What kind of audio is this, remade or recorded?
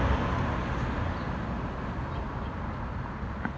recorded